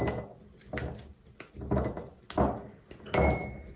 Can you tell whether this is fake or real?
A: real